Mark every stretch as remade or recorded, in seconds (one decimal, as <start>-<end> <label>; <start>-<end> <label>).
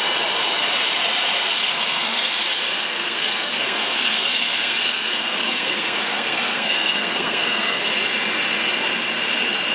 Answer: 0.0-1.7 recorded; 1.7-2.3 remade; 2.3-2.7 recorded; 2.7-7.8 remade; 7.8-9.7 recorded